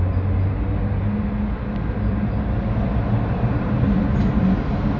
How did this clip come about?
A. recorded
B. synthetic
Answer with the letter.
A